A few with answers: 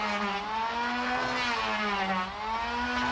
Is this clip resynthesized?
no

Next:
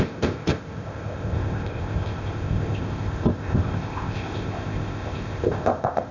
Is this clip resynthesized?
yes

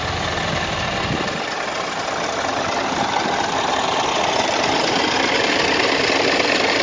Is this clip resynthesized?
no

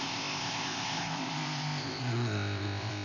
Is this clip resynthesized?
yes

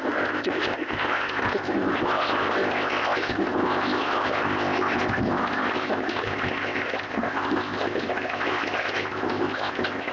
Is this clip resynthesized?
yes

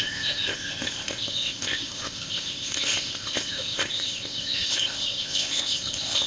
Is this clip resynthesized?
yes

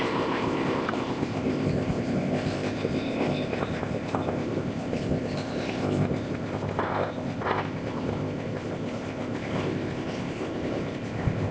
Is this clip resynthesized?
yes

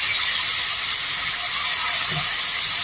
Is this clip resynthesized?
no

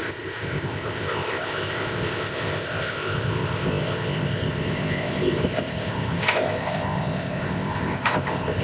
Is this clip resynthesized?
yes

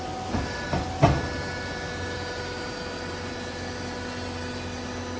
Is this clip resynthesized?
no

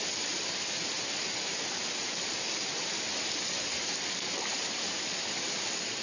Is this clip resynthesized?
no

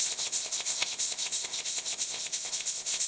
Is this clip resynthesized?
yes